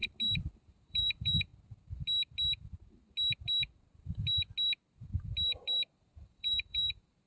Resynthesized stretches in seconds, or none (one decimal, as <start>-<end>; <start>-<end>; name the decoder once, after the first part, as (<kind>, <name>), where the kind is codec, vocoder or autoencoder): 0.6-1.5 (vocoder, BigVGAN v2); 5.9-7.3